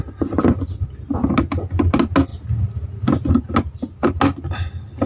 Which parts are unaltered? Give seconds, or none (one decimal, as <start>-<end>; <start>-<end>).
0.0-5.1